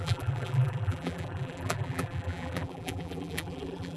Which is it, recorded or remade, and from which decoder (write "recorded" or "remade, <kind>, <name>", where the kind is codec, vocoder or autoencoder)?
remade, vocoder, BigVGAN v2